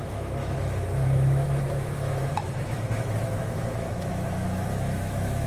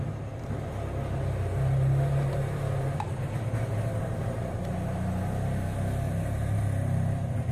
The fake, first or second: first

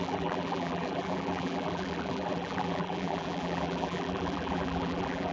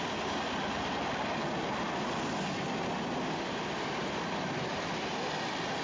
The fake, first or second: first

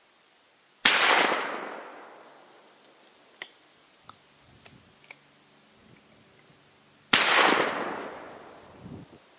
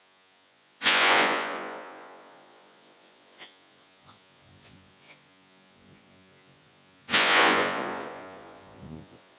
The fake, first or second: second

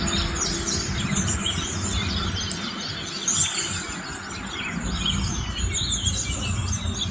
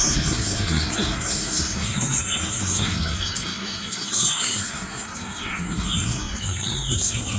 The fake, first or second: second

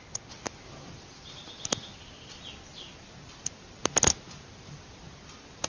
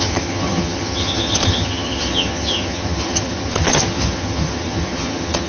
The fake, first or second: second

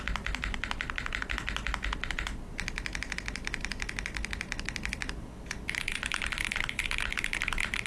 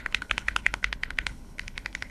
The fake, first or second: second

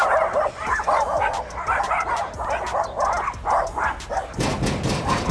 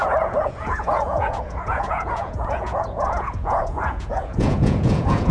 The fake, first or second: second